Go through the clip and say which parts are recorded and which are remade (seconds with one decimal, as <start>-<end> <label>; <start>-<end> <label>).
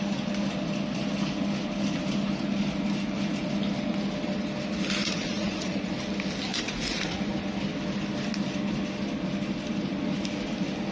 0.0-5.0 recorded; 5.0-5.9 remade; 5.9-6.5 recorded; 6.5-7.2 remade; 7.2-10.9 recorded